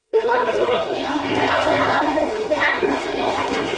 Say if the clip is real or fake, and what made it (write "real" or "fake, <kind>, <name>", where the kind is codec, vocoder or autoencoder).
fake, codec, SNAC